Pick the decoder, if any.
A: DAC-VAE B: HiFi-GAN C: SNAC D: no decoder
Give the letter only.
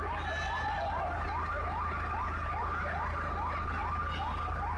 D